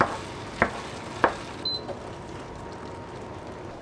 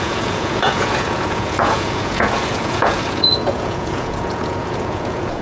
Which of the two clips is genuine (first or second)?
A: first